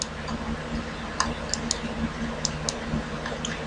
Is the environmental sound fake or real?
real